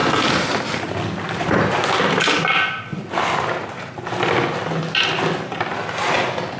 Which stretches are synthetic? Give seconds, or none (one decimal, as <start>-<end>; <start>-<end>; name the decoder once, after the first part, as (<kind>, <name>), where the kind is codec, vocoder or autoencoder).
none